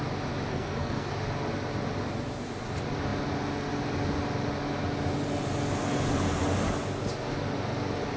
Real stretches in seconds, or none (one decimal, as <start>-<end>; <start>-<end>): 0.0-0.5; 1.1-8.2